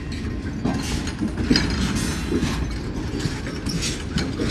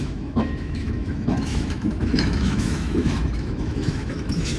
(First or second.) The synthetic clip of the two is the second